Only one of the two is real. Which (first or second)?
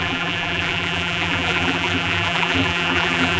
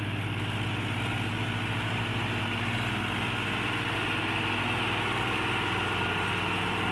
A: second